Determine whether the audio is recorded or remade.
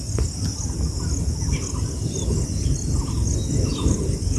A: recorded